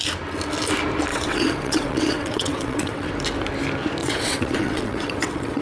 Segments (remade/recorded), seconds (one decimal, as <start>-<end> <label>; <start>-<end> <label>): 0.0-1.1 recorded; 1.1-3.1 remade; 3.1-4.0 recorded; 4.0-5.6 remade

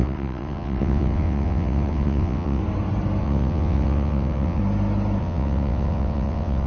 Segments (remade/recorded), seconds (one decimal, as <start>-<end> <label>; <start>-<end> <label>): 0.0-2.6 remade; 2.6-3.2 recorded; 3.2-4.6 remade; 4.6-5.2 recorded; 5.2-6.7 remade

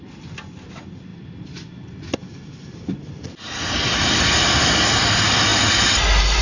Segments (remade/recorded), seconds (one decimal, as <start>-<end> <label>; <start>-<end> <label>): 0.0-6.4 recorded